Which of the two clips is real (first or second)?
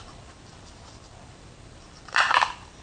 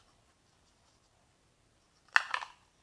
second